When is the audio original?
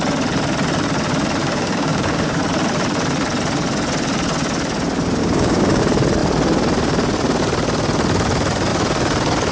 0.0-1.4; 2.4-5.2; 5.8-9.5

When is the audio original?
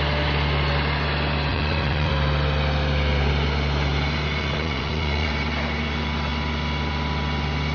0.0-1.5; 2.1-4.4; 5.3-7.7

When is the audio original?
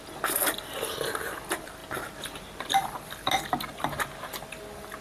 0.0-5.0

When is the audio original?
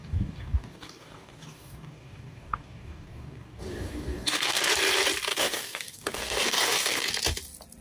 4.7-5.3; 7.1-7.8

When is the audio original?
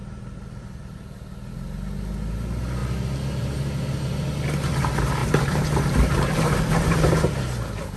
0.6-5.2; 7.4-8.0